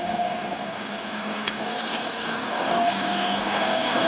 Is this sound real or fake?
fake